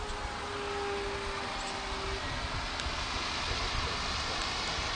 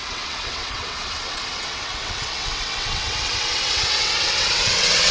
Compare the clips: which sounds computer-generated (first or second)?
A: second